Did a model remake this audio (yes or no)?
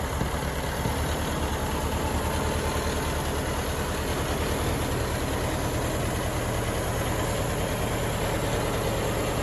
no